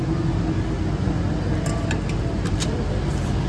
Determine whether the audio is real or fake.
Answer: real